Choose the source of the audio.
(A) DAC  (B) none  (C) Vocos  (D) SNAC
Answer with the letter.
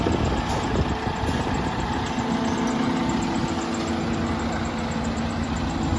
B